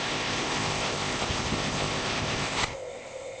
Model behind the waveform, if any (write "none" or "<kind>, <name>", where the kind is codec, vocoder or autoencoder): codec, ZipCodec